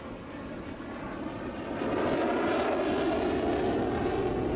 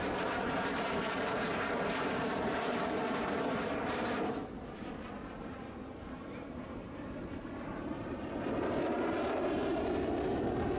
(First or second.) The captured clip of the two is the first